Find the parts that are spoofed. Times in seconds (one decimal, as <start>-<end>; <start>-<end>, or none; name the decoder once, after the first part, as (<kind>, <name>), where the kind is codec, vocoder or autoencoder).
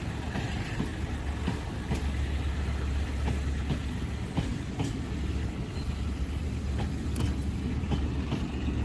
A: none